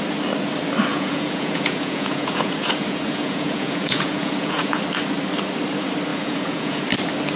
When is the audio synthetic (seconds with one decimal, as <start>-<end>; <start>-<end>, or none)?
0.9-4.8; 6.1-6.8